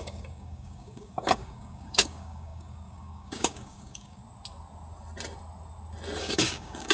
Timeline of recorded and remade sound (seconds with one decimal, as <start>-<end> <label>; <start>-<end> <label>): 0.0-4.2 remade; 4.2-6.2 recorded; 6.2-6.9 remade